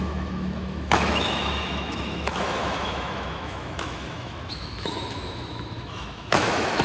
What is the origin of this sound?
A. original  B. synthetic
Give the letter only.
B